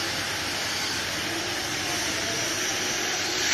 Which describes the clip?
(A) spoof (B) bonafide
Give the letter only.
B